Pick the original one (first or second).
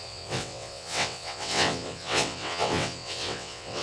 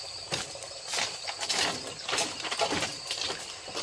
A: second